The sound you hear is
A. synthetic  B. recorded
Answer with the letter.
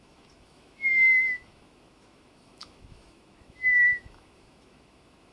A